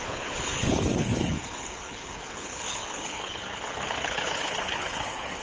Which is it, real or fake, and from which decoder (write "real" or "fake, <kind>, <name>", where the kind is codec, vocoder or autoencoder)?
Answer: fake, codec, HILCodec